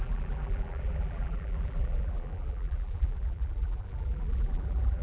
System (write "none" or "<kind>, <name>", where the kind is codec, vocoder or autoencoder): vocoder, BigVGAN v2